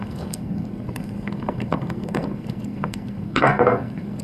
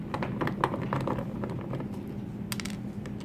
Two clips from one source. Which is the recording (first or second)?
second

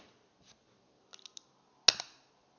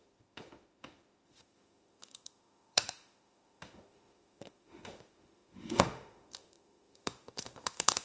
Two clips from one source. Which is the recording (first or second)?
first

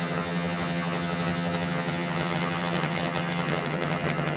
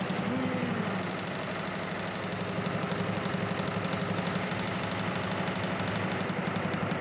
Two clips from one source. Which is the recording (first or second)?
second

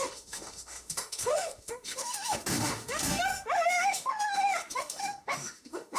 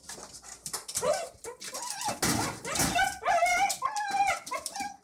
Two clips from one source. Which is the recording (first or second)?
second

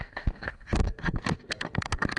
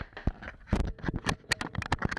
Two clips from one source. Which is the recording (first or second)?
second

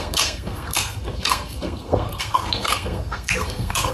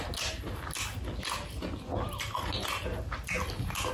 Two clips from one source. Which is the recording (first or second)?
second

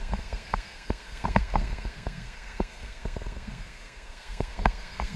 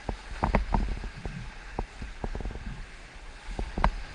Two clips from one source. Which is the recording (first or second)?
second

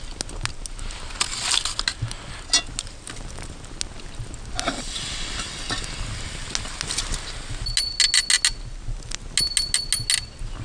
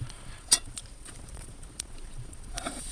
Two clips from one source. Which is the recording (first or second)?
first